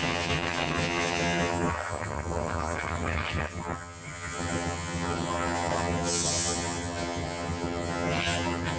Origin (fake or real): fake